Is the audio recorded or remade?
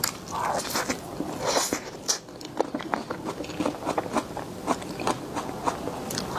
recorded